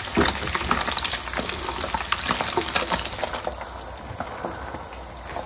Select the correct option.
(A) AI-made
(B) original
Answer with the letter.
B